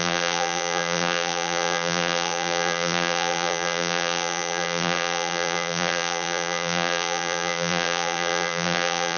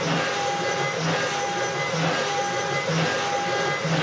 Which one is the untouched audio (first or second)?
second